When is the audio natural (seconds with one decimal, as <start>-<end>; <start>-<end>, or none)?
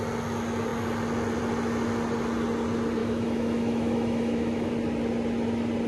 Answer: 0.0-3.0; 4.7-5.9